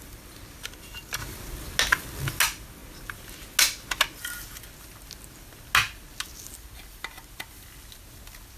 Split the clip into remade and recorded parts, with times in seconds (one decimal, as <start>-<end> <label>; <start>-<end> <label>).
0.0-8.6 recorded